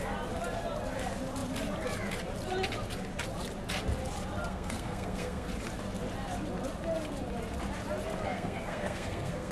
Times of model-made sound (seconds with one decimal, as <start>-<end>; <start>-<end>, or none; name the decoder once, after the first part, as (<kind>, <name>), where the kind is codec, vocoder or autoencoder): 4.5-5.5 (codec, SNAC); 8.2-9.5

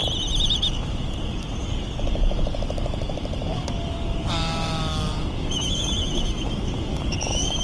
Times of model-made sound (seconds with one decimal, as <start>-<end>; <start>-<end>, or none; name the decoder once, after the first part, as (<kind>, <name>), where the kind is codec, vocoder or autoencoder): 0.7-7.6 (codec, DAC)

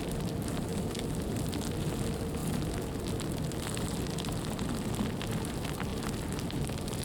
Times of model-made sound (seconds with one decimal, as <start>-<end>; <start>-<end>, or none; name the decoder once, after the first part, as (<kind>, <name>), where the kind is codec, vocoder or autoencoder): none